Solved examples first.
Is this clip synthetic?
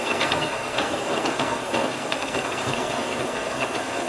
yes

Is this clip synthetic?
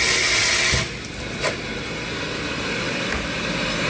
no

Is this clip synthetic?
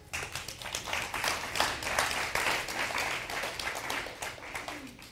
no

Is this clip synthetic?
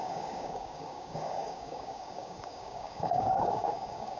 yes